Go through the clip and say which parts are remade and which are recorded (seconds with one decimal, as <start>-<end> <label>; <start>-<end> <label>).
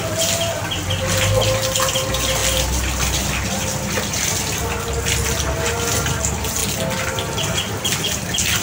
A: 0.0-8.6 recorded